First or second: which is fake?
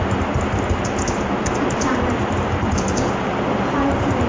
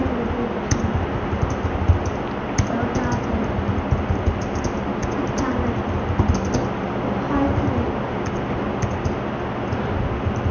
first